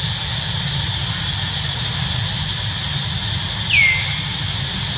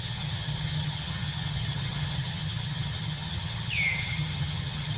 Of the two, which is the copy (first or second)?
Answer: second